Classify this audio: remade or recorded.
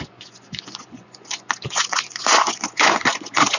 remade